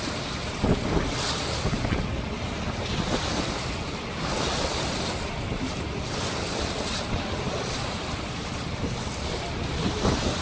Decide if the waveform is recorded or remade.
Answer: recorded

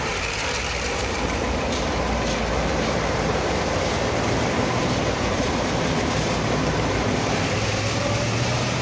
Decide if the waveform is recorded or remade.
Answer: remade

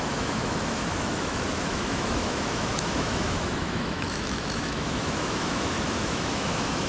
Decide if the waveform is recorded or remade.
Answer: remade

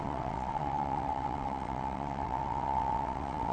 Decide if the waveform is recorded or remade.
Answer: remade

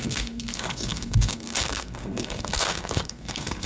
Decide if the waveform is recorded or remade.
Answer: remade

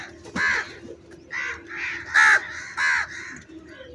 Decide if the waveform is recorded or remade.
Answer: recorded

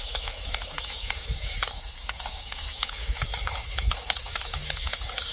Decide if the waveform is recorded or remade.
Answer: remade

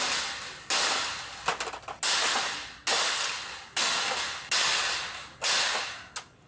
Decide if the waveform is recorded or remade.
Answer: recorded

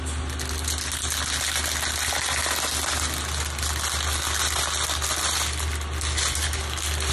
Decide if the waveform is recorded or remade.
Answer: recorded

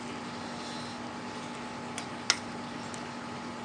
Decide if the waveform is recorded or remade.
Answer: recorded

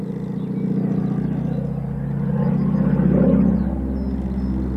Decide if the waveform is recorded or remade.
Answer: recorded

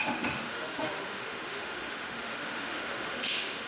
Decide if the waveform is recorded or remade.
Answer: remade